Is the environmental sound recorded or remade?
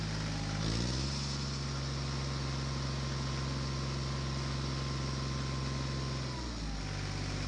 recorded